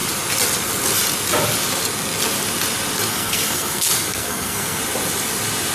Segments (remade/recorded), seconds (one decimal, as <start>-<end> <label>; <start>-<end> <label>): 0.0-3.1 recorded; 3.1-4.8 remade; 4.8-5.7 recorded